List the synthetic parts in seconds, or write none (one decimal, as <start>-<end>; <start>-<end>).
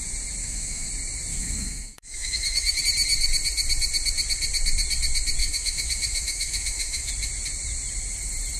0.4-0.9; 1.3-2.8; 5.4-7.1